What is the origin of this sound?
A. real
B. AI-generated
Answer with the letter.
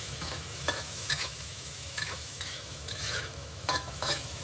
B